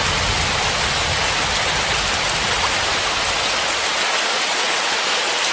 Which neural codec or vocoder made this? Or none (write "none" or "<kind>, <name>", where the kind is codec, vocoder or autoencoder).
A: none